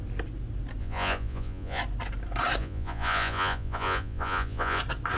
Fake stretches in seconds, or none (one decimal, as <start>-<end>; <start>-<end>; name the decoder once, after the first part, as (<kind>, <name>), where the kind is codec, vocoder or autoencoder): 0.8-1.8 (vocoder, Vocos); 2.6-4.8